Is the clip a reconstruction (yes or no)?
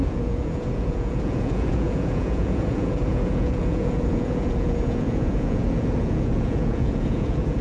yes